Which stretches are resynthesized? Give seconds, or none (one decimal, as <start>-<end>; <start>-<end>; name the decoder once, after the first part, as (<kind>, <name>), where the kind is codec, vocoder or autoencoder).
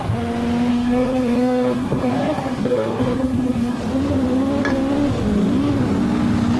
0.7-3.8 (codec, SNAC)